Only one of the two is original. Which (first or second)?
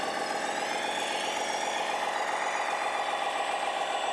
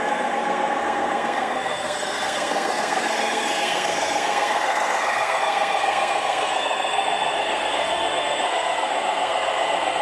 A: first